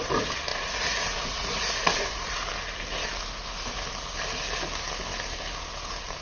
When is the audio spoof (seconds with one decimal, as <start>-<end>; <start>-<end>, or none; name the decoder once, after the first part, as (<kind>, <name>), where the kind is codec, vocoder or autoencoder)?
0.5-2.3 (vocoder, Vocos)